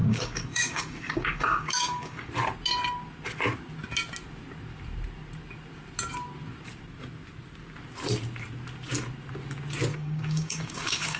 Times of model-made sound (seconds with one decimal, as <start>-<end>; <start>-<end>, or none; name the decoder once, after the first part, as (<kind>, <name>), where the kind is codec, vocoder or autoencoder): 0.0-2.3 (codec, DAC); 9.9-11.2

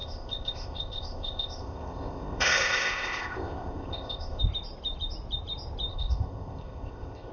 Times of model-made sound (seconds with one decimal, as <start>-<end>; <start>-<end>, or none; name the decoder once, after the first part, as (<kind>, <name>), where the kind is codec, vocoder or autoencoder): 0.0-4.4 (codec, ZipCodec); 5.9-7.3

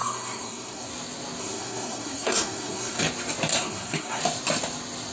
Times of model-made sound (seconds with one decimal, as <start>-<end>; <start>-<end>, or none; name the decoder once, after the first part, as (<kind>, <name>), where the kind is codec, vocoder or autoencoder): 0.0-0.9 (codec, SNAC); 1.4-3.0; 3.5-4.2

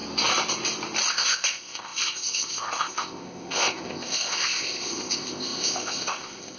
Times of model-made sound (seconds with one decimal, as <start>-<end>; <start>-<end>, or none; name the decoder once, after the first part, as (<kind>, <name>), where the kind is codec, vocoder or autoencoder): 1.1-6.6 (codec, ZipCodec)

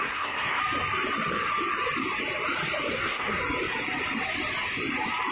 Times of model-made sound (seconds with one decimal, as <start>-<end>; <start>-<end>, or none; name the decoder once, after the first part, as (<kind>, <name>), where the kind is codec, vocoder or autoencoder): 0.0-0.6 (codec, SNAC); 2.9-3.4

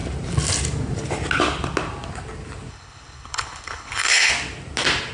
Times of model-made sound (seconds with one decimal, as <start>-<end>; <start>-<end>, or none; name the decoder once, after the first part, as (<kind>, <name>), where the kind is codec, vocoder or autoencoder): 2.7-4.3 (codec, HILCodec)

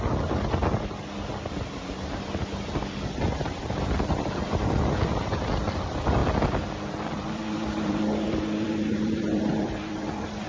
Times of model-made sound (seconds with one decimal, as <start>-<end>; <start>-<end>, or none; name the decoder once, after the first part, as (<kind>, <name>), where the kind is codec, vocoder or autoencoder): 0.0-0.6 (vocoder, BigVGAN v2); 3.4-10.5